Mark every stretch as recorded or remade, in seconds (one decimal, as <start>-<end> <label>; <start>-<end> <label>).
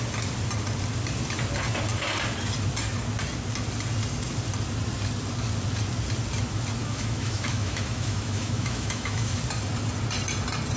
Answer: 0.0-6.8 recorded; 6.8-9.4 remade; 9.4-10.8 recorded